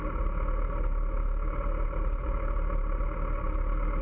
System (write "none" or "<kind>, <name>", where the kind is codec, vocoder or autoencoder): none